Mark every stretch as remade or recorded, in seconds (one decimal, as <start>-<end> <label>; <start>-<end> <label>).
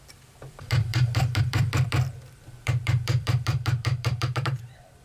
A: 0.0-5.0 remade